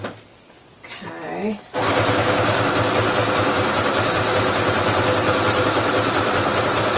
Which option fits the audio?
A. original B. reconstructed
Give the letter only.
A